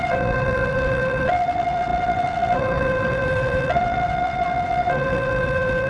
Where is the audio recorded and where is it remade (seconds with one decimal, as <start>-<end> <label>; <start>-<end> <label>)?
0.0-5.9 remade